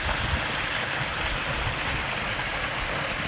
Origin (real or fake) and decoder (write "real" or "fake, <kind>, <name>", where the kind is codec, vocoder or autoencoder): real